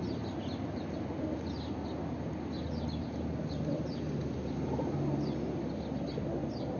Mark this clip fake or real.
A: real